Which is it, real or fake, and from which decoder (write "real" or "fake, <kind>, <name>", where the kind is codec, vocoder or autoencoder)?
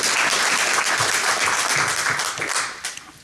real